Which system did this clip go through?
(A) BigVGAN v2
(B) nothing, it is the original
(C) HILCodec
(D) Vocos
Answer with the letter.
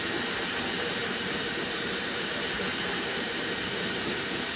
A